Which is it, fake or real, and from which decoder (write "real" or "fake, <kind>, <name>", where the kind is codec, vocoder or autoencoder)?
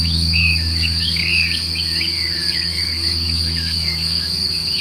fake, codec, DAC